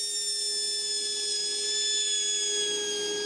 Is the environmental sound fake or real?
real